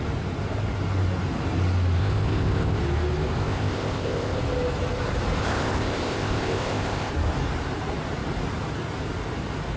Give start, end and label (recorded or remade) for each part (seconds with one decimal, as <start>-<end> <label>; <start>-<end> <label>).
0.0-2.0 recorded; 2.0-2.8 remade; 2.8-3.4 recorded; 3.4-4.4 remade; 4.4-5.4 recorded; 5.4-7.1 remade; 7.1-9.8 recorded